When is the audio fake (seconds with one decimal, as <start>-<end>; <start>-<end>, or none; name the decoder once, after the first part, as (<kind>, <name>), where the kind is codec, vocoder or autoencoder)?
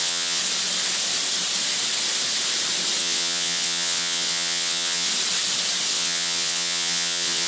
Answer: 0.0-0.4 (vocoder, WaveNeXt); 3.0-5.1; 5.9-7.5